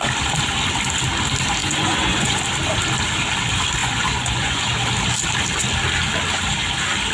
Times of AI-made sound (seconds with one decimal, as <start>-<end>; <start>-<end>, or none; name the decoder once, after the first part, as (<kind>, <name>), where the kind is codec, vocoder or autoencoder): 1.6-2.4 (vocoder, Vocos); 3.8-4.6